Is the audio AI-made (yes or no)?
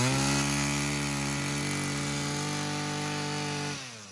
no